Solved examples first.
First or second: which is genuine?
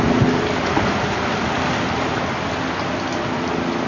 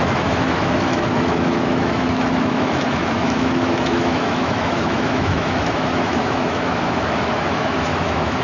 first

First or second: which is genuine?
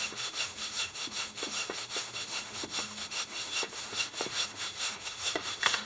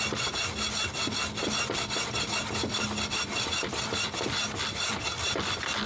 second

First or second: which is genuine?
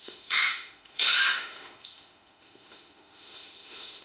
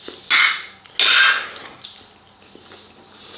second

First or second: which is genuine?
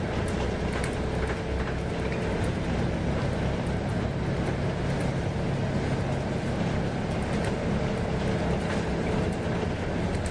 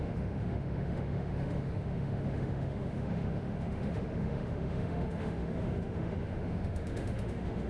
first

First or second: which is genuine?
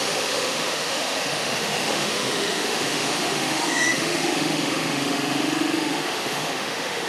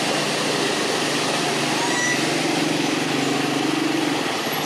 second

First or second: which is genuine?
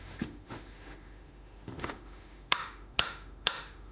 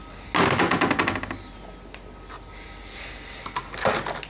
second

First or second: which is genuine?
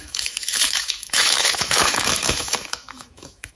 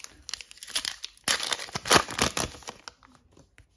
second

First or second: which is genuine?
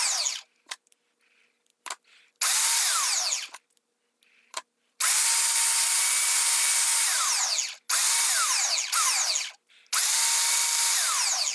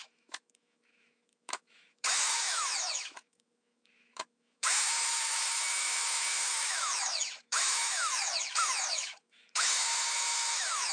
first